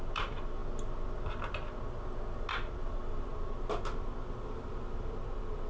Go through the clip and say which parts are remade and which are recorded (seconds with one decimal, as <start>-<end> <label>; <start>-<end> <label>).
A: 0.0-0.6 remade; 0.6-2.5 recorded; 2.5-3.3 remade; 3.3-4.5 recorded; 4.5-5.7 remade

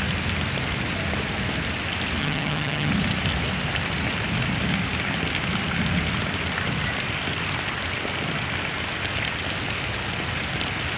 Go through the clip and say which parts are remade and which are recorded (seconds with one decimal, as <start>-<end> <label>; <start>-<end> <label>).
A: 0.0-2.2 recorded; 2.2-2.9 remade; 2.9-11.0 recorded

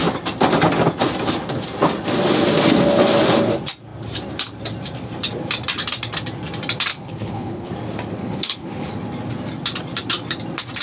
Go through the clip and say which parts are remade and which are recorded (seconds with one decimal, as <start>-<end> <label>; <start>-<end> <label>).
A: 0.0-6.9 recorded; 6.9-7.7 remade; 7.7-8.2 recorded; 8.2-8.9 remade; 8.9-10.8 recorded

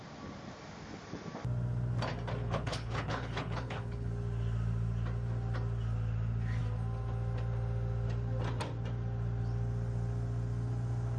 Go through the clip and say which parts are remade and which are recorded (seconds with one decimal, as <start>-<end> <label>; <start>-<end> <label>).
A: 0.0-2.4 recorded; 2.4-4.1 remade; 4.1-11.2 recorded

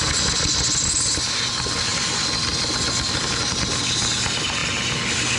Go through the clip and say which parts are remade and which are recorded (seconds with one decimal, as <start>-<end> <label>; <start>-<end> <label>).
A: 0.0-5.4 recorded